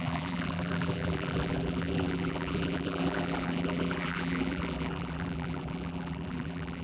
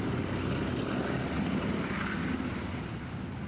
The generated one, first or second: first